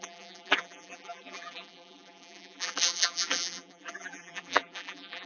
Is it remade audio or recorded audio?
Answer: remade